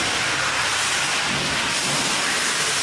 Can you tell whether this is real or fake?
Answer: real